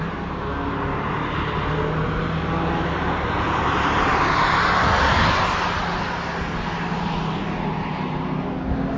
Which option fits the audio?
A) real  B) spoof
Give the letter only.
A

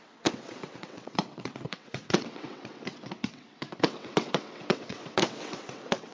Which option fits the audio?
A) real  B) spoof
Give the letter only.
B